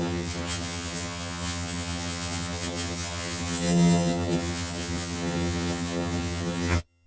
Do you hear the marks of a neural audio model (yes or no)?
yes